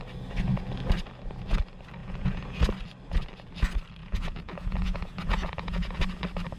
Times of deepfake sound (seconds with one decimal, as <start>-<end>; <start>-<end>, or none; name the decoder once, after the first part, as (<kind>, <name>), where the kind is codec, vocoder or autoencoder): 2.0-2.6 (vocoder, Vocos); 4.0-6.0